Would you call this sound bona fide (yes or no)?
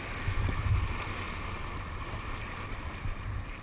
yes